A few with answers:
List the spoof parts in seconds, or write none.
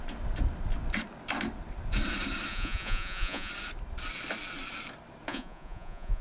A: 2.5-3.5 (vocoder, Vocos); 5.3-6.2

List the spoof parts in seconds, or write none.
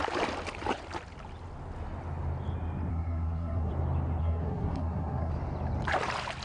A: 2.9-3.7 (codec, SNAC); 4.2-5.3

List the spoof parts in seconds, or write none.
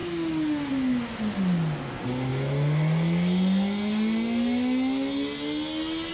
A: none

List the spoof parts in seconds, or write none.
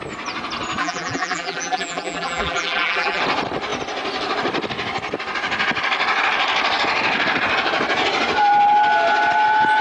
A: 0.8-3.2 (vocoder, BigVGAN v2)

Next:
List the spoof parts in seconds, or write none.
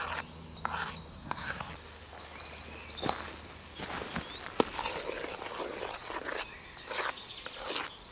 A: 1.1-1.7 (codec, SNAC)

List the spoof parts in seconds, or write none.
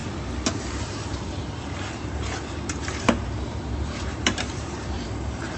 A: 0.7-5.6 (vocoder, BigVGAN v2)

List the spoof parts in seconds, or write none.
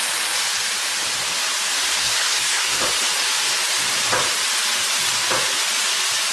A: 2.0-2.8 (codec, SNAC)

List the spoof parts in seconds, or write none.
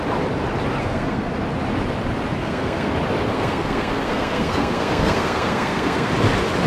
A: 0.8-1.3 (codec, SNAC); 2.4-2.9; 3.3-6.1